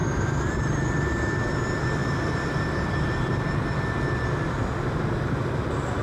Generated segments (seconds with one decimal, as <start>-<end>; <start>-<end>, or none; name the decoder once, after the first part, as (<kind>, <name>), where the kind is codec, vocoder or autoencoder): 0.0-1.3 (vocoder, BigVGAN v2); 2.0-3.1